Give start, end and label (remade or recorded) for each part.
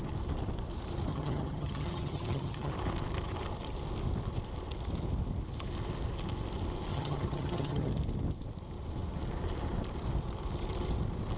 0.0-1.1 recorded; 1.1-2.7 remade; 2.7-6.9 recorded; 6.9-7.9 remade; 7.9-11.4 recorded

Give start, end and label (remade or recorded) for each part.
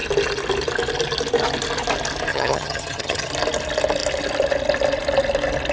0.0-2.3 recorded; 2.3-3.3 remade; 3.3-5.7 recorded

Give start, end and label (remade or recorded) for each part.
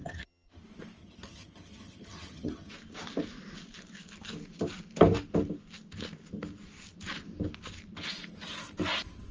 0.0-0.6 remade; 0.6-1.0 recorded; 1.0-2.7 remade; 2.7-9.3 recorded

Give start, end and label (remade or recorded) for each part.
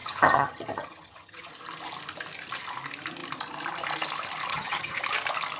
0.0-1.5 remade; 1.5-4.5 recorded; 4.5-5.0 remade; 5.0-5.6 recorded